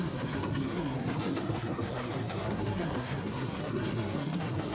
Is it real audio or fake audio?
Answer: fake